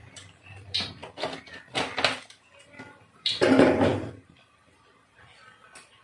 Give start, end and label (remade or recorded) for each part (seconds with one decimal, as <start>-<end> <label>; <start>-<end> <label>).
0.0-1.0 remade; 1.0-2.6 recorded; 2.6-6.0 remade